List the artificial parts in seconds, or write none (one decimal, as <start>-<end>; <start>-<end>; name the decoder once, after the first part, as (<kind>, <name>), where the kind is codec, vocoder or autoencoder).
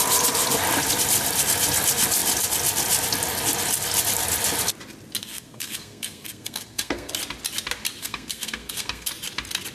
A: 5.2-7.1 (codec, SNAC); 8.0-9.1